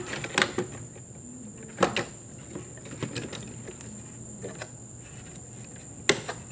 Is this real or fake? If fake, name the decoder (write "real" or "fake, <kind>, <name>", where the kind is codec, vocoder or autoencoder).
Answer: real